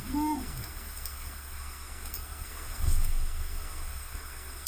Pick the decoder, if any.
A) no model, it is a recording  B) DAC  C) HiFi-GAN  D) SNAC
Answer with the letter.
D